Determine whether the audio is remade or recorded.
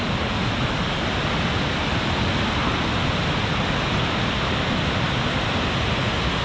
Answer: recorded